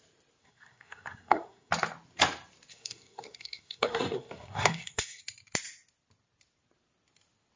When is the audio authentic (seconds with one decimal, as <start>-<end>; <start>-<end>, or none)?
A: 0.0-0.4; 1.7-2.7; 5.2-7.6